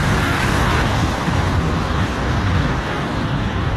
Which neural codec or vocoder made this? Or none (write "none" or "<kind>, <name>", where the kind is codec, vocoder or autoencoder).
codec, DAC